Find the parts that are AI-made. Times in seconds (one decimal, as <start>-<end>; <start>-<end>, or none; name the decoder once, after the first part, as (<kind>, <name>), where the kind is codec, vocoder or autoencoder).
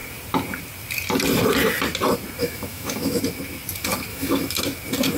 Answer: 2.4-3.2 (autoencoder, DAC-VAE); 4.1-4.6